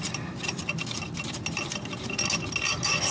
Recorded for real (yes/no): yes